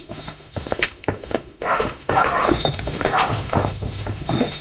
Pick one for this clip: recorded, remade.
remade